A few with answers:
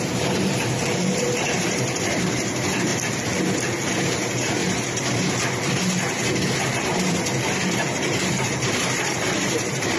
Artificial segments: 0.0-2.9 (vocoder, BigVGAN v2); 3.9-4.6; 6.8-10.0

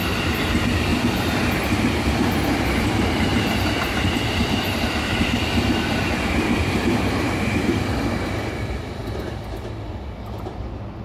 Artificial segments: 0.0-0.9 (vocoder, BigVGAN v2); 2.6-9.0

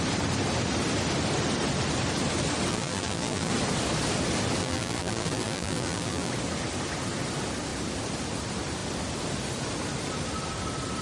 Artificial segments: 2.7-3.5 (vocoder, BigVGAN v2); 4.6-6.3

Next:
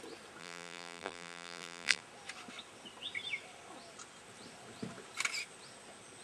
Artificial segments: 0.4-2.0 (vocoder, BigVGAN v2)

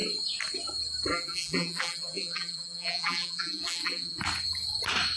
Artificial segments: 1.1-4.2 (vocoder, BigVGAN v2)